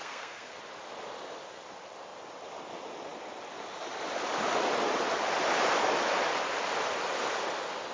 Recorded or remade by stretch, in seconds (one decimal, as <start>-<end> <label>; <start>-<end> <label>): 0.0-0.6 remade; 0.6-7.9 recorded